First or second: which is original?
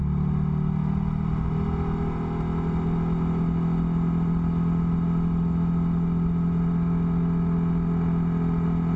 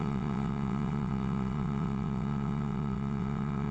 first